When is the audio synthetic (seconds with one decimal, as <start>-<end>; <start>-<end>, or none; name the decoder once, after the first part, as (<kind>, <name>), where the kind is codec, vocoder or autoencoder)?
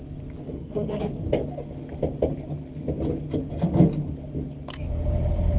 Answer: 0.4-1.0 (codec, SNAC)